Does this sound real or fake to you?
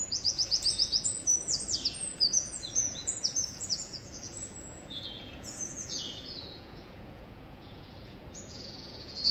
fake